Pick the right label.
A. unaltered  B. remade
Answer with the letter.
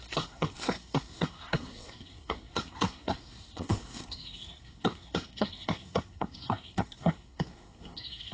B